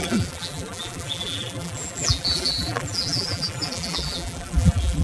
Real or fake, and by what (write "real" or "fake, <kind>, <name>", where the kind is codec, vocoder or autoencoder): fake, vocoder, BigVGAN v2